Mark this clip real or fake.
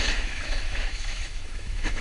fake